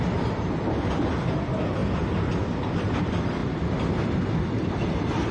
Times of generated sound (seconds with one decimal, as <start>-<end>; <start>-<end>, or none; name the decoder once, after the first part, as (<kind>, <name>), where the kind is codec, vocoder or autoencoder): 0.0-1.8 (vocoder, BigVGAN v2); 2.6-3.4; 4.4-5.3